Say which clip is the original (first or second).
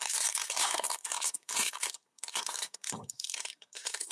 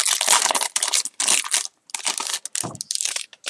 second